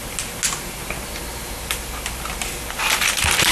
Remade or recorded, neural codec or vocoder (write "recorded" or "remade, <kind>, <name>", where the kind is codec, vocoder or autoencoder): recorded